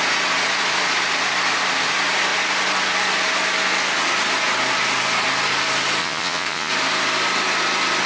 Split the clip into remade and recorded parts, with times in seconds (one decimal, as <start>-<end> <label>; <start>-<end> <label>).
0.0-6.0 recorded; 6.0-6.7 remade; 6.7-8.1 recorded